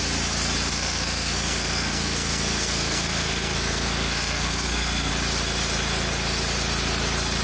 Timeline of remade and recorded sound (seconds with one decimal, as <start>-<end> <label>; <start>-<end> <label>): 0.0-0.7 recorded; 0.7-5.1 remade; 5.1-7.4 recorded